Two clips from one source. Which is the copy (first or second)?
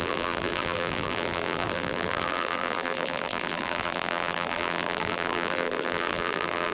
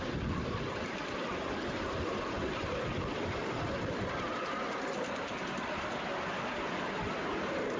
first